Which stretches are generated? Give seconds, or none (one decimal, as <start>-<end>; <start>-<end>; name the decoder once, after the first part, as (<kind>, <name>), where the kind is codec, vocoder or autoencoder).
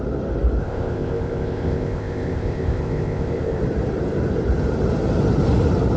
0.6-3.6 (codec, ZipCodec)